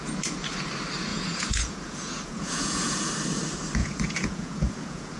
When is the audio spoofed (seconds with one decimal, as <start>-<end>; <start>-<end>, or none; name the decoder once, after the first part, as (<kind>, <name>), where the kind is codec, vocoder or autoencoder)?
1.1-3.1 (vocoder, Vocos); 3.8-5.2